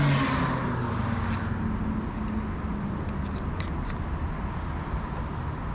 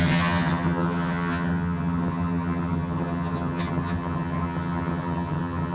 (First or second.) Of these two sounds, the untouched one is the first